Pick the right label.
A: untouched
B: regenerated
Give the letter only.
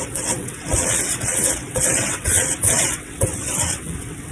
B